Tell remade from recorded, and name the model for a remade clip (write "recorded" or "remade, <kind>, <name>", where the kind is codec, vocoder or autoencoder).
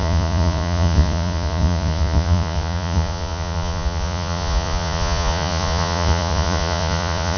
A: remade, vocoder, Vocos